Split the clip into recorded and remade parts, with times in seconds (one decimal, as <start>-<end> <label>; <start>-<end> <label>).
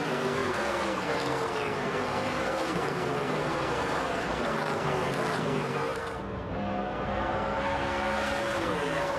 0.0-9.2 remade